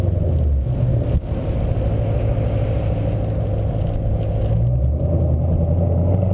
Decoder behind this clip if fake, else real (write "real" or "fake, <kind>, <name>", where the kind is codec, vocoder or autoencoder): real